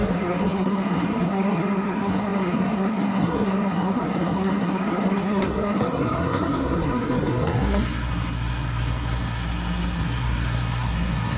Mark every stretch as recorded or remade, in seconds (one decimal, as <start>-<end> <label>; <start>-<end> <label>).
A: 0.0-11.4 remade